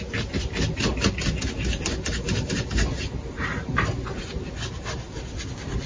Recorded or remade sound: recorded